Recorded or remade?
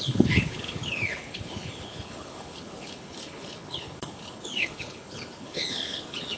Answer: remade